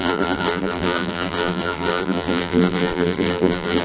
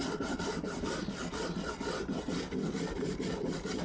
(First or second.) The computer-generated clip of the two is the first